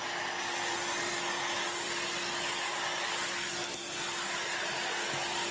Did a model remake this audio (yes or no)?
no